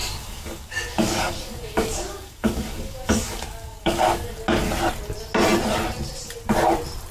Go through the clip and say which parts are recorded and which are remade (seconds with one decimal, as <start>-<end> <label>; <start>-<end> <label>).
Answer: 0.0-4.3 remade; 4.3-7.1 recorded